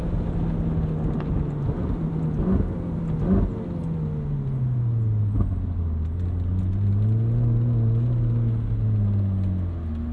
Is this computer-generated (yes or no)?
no